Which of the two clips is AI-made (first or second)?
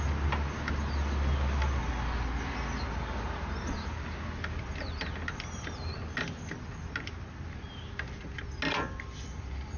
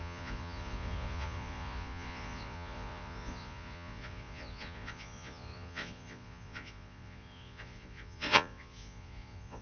second